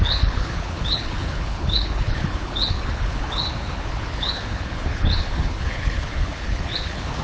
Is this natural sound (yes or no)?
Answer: no